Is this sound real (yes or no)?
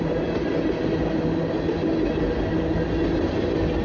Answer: yes